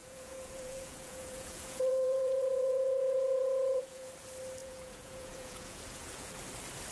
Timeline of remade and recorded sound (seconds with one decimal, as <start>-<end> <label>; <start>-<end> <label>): 0.0-4.1 remade; 4.1-4.6 recorded; 4.6-6.3 remade; 6.3-6.9 recorded